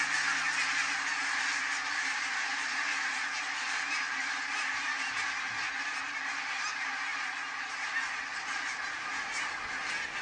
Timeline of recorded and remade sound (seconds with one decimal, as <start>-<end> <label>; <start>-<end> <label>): 0.0-10.2 recorded